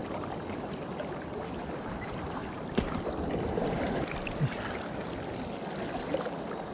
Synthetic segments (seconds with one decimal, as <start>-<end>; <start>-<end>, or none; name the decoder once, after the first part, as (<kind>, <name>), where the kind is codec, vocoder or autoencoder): none